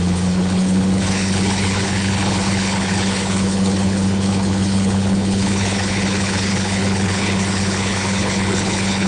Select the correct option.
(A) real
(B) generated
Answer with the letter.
B